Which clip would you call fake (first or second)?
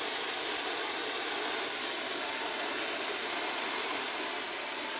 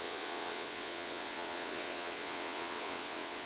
second